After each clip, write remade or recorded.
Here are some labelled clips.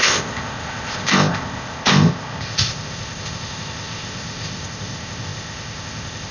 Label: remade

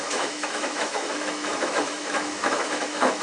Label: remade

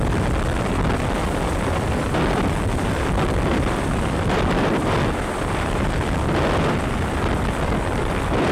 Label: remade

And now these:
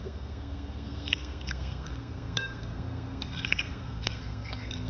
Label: remade